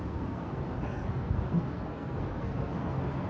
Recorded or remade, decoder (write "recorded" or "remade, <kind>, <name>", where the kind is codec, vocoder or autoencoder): remade, codec, SNAC